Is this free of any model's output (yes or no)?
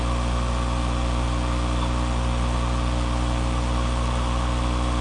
yes